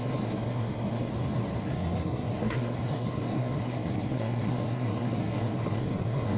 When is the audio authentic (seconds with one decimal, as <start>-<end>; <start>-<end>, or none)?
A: 1.1-1.6